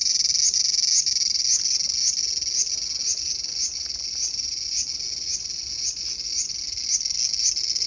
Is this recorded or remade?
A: recorded